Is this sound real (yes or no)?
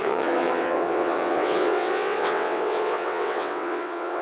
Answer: no